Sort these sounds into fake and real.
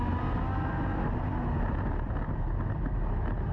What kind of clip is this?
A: real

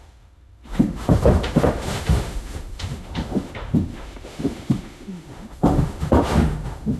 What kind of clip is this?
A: fake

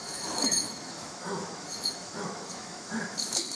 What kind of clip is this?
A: fake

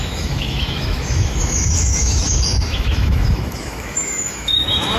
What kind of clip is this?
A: fake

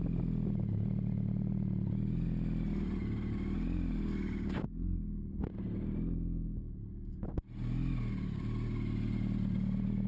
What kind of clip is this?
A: real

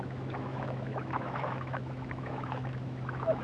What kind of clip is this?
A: fake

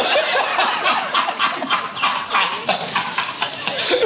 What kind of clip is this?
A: real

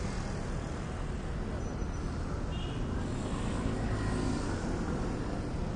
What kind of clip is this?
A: real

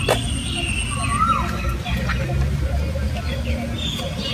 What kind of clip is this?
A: real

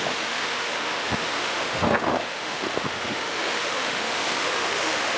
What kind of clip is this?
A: fake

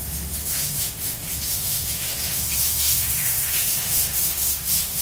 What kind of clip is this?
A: fake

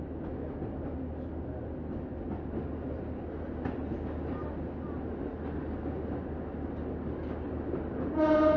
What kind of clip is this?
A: real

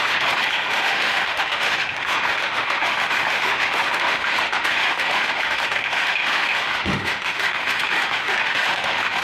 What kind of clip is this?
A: fake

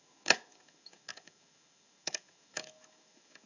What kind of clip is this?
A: fake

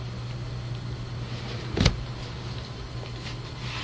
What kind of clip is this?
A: real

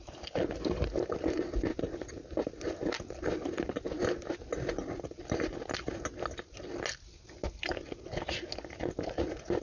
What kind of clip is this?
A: real